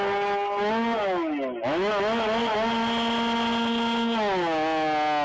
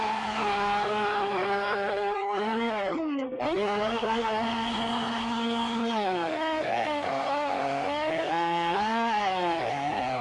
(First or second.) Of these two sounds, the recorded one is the first